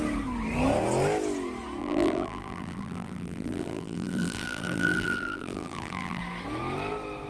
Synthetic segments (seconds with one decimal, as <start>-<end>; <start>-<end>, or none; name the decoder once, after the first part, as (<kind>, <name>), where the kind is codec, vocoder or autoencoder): 1.8-6.2 (vocoder, BigVGAN v2)